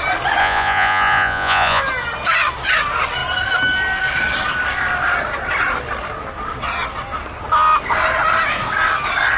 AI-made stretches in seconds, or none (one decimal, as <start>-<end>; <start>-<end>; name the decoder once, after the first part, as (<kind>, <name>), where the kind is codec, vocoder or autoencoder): 0.4-1.8 (vocoder, Vocos)